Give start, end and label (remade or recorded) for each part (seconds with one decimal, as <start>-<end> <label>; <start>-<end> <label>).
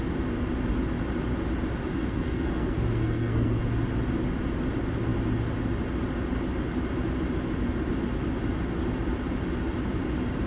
0.0-1.9 recorded; 1.9-3.6 remade; 3.6-10.5 recorded